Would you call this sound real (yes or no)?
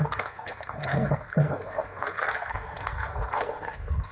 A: no